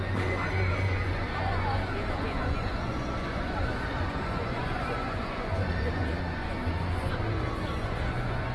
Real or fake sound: fake